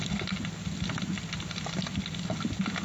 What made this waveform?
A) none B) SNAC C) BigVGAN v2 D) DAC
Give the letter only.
A